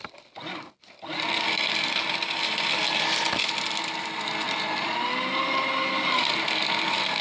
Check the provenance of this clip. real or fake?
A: real